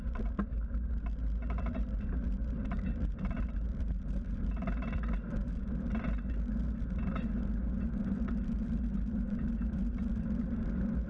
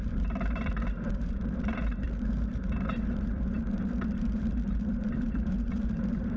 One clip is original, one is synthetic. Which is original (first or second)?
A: first